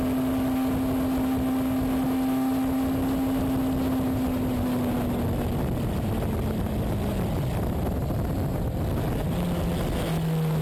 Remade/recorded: recorded